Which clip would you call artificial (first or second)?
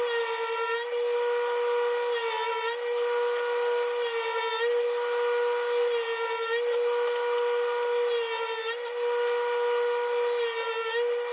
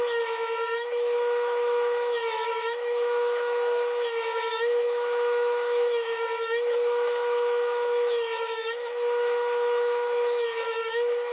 second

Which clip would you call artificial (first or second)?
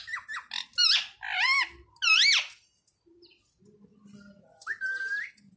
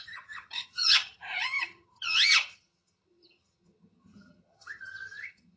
second